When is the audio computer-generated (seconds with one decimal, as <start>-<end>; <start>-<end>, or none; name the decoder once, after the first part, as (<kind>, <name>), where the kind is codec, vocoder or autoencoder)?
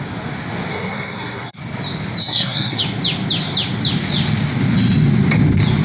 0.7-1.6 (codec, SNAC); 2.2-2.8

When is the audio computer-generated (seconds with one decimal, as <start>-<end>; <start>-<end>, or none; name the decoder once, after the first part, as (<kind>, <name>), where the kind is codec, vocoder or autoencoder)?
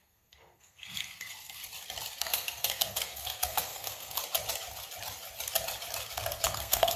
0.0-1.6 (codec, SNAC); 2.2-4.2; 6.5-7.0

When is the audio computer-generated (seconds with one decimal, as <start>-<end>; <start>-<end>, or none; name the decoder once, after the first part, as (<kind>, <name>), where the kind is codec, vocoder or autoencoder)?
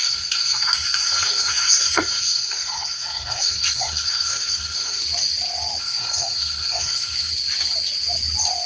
0.0-5.0 (codec, SNAC); 5.8-7.3